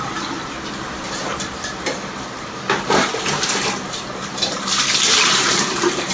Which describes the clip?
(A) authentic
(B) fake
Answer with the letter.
A